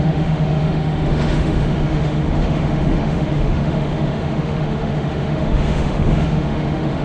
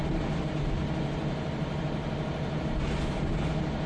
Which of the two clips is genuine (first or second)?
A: second